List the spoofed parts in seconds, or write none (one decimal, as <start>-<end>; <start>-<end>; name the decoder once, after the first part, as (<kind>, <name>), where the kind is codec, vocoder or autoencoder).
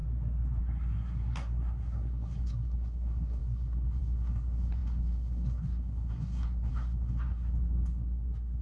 0.6-8.6 (codec, SNAC)